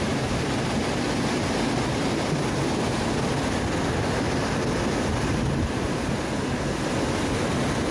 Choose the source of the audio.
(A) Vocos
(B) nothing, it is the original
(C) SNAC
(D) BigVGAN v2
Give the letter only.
B